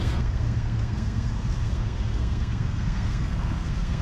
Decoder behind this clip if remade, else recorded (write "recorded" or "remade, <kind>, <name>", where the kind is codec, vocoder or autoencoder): remade, codec, SNAC